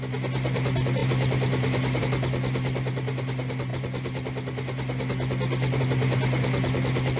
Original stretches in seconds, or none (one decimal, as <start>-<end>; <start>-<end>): 0.0-7.2

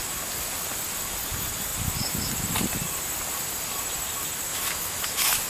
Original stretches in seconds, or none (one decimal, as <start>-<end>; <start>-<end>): 0.0-4.5

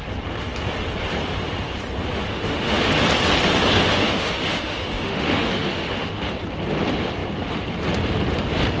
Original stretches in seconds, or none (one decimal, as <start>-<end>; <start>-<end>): 0.0-2.3; 2.9-4.0; 6.2-8.8

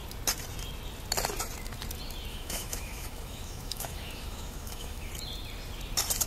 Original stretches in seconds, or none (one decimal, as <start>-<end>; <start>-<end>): 0.0-2.3; 5.1-6.3